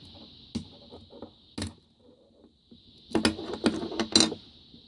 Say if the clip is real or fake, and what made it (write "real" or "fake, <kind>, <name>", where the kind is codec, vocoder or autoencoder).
real